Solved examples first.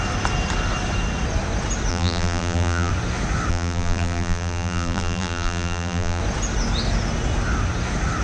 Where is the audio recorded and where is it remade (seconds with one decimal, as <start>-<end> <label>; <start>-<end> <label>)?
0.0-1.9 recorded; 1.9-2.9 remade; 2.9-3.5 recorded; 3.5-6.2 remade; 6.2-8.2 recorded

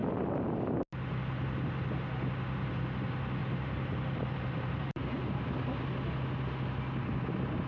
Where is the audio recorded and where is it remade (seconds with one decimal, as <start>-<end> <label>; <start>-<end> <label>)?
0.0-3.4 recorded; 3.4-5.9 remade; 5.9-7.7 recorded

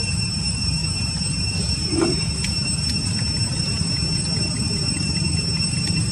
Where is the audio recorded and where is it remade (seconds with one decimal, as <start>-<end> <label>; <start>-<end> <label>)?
0.0-6.1 remade

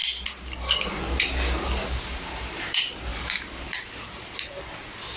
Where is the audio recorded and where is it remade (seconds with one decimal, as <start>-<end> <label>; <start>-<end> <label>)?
0.0-3.1 recorded; 3.1-4.6 remade; 4.6-5.2 recorded